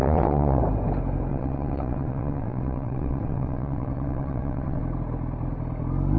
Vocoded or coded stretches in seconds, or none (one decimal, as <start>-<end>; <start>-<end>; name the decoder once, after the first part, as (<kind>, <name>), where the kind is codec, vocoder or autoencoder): 0.0-0.6 (vocoder, WaveNeXt); 1.3-4.8